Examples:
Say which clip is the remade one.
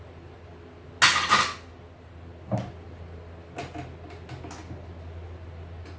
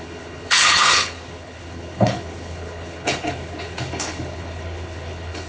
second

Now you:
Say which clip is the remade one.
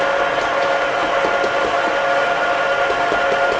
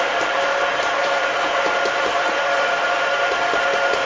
second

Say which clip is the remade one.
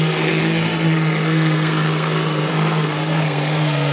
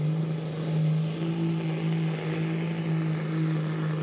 first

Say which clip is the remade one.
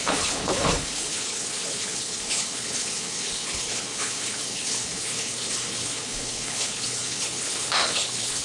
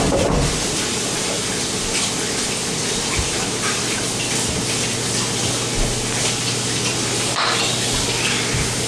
first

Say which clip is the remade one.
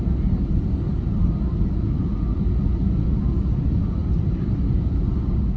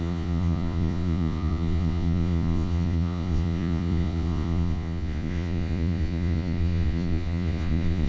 second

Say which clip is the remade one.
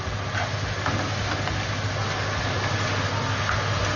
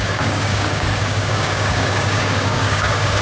second